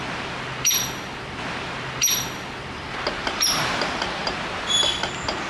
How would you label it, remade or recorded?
recorded